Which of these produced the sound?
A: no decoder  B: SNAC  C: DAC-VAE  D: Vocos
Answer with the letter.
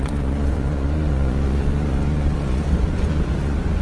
D